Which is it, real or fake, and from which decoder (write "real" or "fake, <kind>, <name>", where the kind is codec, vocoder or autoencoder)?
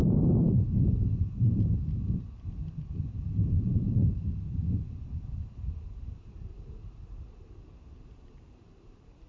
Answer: fake, vocoder, BigVGAN v2